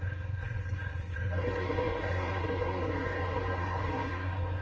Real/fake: fake